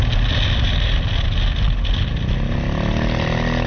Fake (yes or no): no